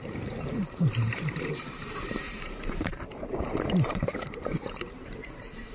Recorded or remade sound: remade